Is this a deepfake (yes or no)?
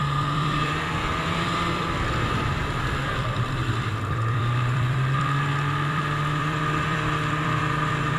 yes